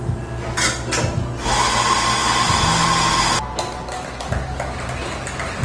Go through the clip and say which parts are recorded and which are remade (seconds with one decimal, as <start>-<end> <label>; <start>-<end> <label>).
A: 0.0-5.6 recorded